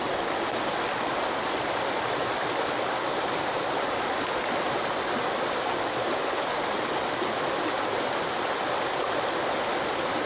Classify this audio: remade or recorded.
recorded